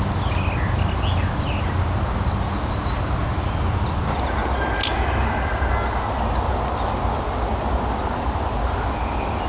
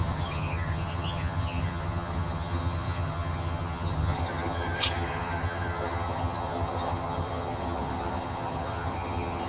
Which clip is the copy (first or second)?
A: second